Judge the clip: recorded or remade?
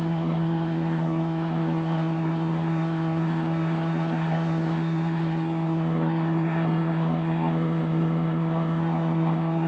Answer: remade